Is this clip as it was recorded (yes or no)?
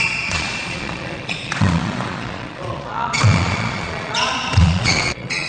no